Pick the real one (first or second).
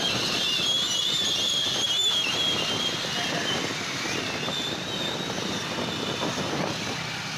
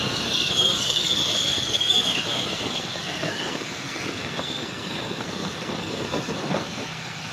first